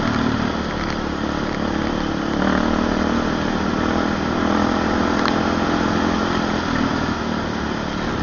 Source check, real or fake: real